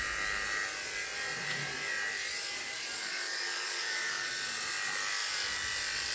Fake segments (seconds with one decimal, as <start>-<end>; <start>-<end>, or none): 2.6-4.3